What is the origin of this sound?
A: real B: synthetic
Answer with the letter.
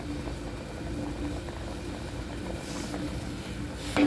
A